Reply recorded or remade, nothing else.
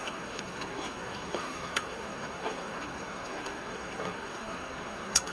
remade